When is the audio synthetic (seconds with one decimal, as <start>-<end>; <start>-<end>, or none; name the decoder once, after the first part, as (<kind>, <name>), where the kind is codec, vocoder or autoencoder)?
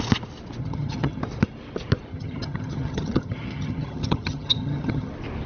0.6-1.2 (vocoder, HiFi-GAN); 2.1-5.1